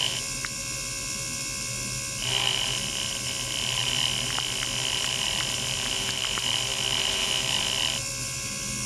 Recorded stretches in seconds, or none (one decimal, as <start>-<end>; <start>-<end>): 3.8-5.1; 6.7-8.1